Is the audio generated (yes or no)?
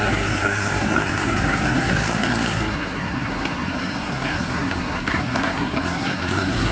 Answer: yes